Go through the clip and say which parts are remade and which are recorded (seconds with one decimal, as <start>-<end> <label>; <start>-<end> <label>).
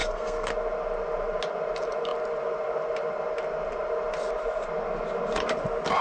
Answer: 0.0-0.5 remade; 0.5-6.0 recorded